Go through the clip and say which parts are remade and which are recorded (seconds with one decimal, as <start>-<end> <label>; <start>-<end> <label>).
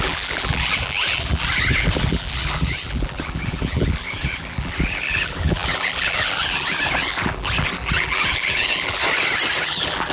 0.0-9.0 remade; 9.0-9.6 recorded; 9.6-10.1 remade